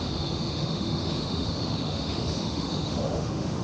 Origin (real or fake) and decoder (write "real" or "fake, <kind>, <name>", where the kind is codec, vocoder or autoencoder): fake, autoencoder, DAC-VAE